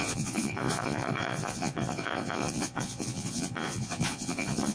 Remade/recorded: remade